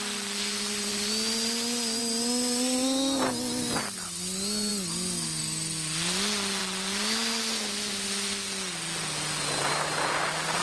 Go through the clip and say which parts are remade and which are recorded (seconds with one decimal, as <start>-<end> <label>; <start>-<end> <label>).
0.0-10.6 recorded